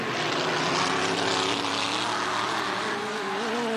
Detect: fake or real real